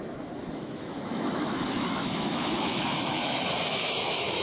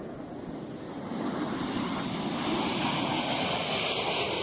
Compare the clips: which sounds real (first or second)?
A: second